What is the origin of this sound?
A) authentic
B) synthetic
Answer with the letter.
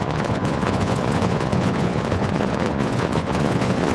B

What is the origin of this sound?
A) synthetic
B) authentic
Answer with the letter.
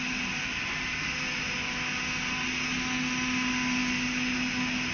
B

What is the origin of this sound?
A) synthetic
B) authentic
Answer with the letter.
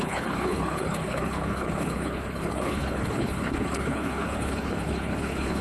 A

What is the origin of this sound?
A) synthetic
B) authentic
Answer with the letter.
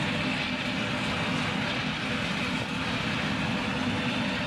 B